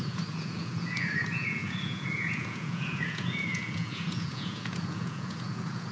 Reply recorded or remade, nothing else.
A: remade